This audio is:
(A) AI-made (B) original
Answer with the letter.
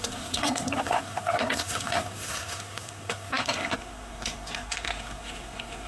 A